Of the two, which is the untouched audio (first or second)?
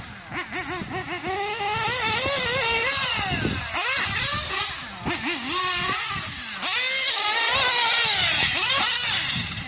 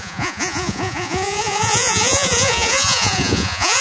first